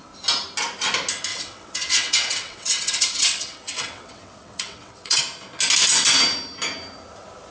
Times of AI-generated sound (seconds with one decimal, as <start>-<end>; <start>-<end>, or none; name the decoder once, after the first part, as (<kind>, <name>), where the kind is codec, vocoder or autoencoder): 1.3-5.2 (vocoder, WaveNeXt)